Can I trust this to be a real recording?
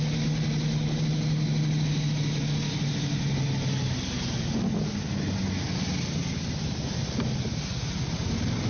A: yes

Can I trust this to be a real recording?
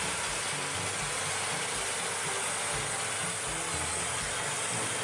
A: yes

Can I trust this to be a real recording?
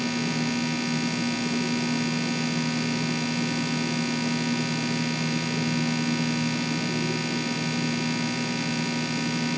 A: yes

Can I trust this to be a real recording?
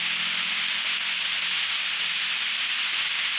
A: yes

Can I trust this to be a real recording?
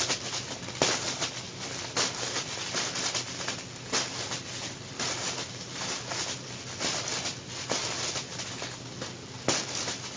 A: yes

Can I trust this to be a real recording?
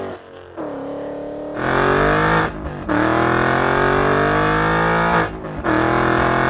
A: yes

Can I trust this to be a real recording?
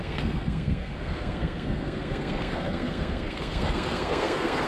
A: no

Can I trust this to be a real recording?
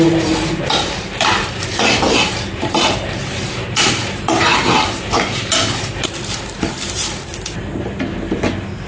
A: no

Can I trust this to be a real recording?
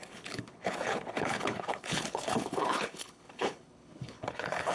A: no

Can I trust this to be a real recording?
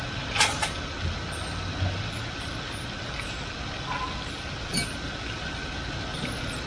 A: yes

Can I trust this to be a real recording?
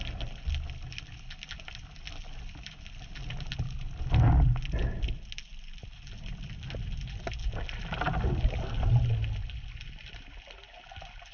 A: yes